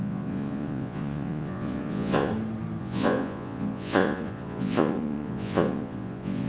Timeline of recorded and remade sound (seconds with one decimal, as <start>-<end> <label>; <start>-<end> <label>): 0.0-2.3 remade; 2.3-2.8 recorded; 2.8-6.5 remade